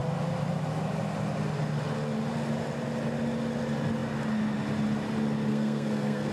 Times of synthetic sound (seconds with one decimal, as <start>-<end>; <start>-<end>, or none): 5.5-6.3